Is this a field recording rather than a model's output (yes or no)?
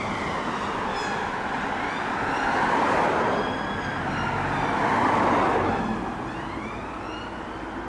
yes